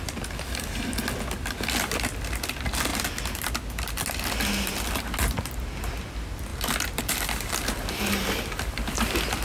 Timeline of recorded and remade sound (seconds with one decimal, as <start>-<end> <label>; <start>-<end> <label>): 0.0-9.4 recorded